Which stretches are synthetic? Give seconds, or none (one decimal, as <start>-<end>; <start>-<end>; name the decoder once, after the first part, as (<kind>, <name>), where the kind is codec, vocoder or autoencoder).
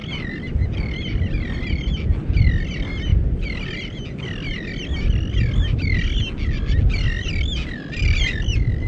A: none